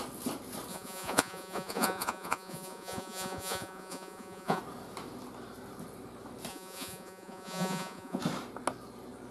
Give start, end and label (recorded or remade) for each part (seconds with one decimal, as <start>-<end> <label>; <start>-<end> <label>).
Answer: 0.0-0.7 recorded; 0.7-4.6 remade; 4.6-6.5 recorded; 6.5-8.2 remade; 8.2-9.3 recorded